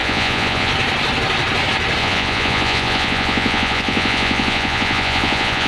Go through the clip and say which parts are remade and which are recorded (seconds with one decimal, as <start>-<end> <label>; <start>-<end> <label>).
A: 0.0-0.7 remade; 0.7-2.0 recorded; 2.0-5.7 remade